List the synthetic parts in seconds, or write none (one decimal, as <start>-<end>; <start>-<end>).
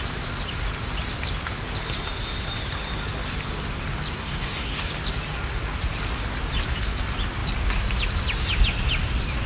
4.2-4.9